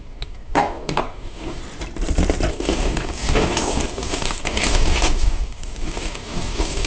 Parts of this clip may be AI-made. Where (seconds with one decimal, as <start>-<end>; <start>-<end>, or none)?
0.0-1.6; 2.5-6.9